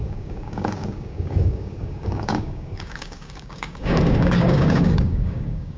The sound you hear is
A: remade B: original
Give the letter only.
A